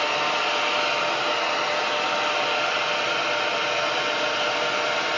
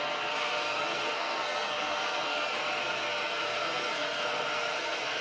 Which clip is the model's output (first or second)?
second